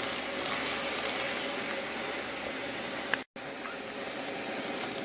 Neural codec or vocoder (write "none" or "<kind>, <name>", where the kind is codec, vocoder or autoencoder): none